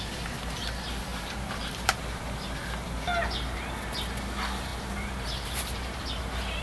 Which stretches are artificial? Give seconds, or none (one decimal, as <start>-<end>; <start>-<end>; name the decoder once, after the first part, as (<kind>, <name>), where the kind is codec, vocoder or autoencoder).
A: 1.1-2.0 (vocoder, BigVGAN v2); 4.7-6.0